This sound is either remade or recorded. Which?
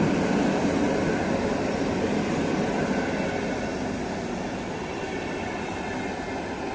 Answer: recorded